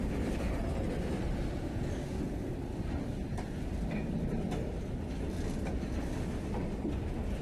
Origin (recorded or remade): recorded